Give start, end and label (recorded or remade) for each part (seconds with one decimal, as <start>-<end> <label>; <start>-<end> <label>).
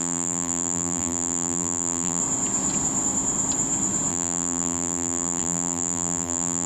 0.0-2.2 remade; 2.2-4.1 recorded; 4.1-6.7 remade